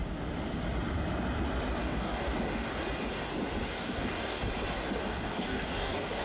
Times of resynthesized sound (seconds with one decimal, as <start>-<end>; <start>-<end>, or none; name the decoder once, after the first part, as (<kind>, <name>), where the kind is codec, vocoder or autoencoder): 1.8-2.7 (codec, DAC); 3.8-4.4; 5.0-6.2